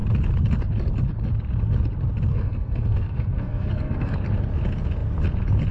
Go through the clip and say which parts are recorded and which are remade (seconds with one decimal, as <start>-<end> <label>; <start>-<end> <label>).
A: 0.0-2.3 recorded; 2.3-4.1 remade; 4.1-5.7 recorded